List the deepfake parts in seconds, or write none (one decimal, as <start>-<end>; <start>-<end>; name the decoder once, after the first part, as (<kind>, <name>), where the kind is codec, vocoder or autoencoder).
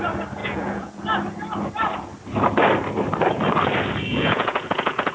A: 0.4-0.9 (vocoder, Vocos); 4.1-5.1